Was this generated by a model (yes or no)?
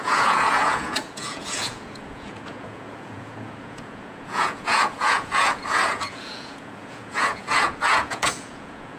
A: yes